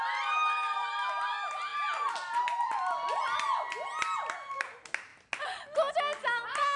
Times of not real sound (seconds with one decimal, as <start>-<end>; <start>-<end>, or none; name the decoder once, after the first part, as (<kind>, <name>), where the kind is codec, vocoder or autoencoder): none